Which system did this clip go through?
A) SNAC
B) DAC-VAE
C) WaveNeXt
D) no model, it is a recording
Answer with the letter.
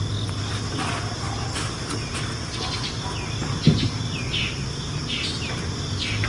D